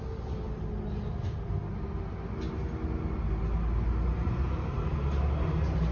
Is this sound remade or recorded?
recorded